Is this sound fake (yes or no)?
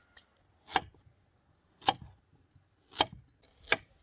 no